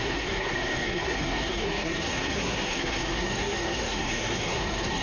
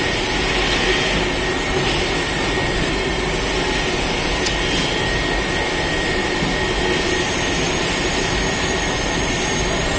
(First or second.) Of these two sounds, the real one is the second